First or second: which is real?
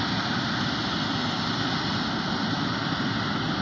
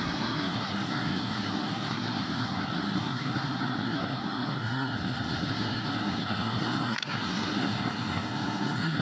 first